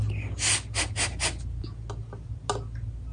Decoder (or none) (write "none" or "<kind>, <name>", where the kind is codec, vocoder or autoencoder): none